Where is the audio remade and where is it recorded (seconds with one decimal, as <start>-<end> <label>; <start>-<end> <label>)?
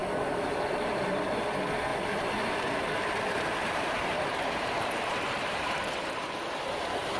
0.0-1.0 remade; 1.0-1.9 recorded; 1.9-5.9 remade; 5.9-7.2 recorded